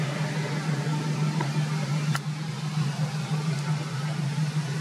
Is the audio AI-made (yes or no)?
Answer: no